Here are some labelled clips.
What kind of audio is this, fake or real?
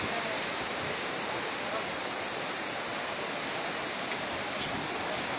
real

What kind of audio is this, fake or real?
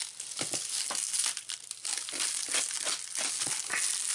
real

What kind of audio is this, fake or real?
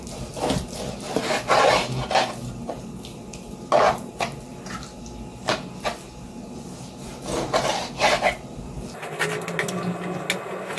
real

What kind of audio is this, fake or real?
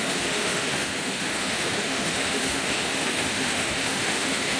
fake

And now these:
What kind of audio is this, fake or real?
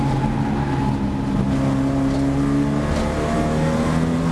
real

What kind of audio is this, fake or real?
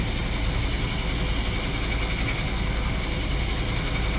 real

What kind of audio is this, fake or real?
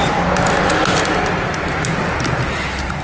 real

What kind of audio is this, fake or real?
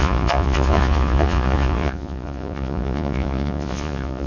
fake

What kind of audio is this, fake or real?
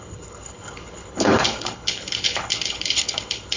fake